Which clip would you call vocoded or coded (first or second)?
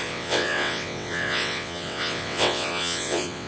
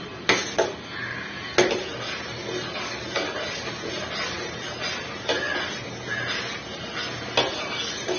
first